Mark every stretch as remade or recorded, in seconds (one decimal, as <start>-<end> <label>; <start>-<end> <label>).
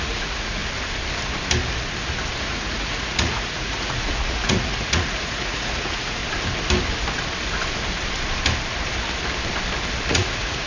0.0-0.6 remade; 0.6-2.4 recorded; 2.4-6.2 remade; 6.2-10.1 recorded; 10.1-10.7 remade